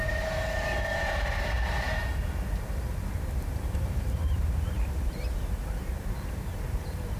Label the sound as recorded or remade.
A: remade